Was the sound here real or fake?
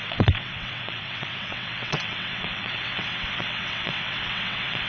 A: fake